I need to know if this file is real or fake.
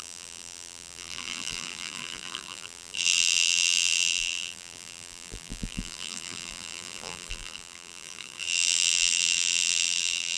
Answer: fake